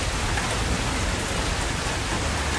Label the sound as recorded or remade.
recorded